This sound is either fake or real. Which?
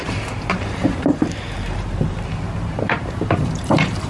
fake